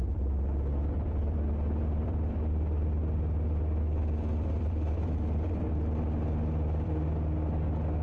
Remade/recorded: remade